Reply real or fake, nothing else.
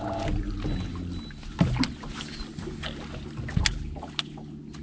real